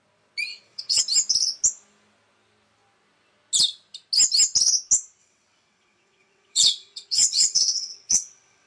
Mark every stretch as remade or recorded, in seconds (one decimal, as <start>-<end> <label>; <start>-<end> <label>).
0.0-0.5 recorded; 0.5-1.0 remade; 1.0-5.2 recorded; 5.2-8.7 remade